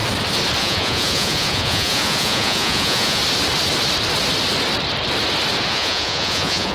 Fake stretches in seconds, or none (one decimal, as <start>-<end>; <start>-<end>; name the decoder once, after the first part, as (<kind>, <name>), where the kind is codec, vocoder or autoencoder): 0.6-3.2 (vocoder, Vocos); 5.7-6.7